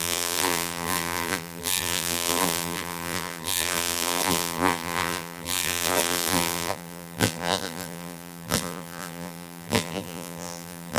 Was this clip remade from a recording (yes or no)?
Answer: yes